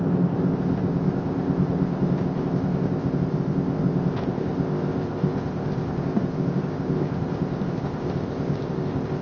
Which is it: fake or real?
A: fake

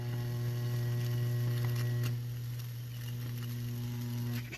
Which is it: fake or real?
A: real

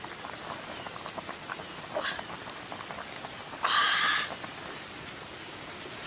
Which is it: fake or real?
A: real